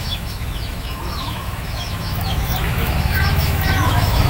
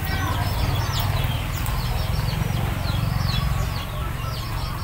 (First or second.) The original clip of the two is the second